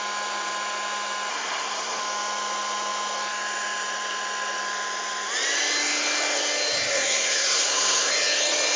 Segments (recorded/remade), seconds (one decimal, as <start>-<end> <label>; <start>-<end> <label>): 0.0-1.3 recorded; 1.3-2.0 remade; 2.0-6.9 recorded; 6.9-8.1 remade; 8.1-8.8 recorded